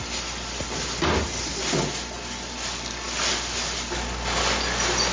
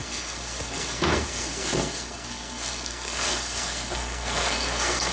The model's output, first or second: second